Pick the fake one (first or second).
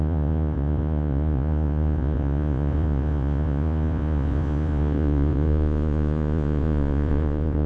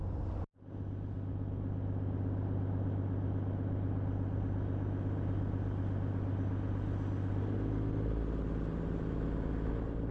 first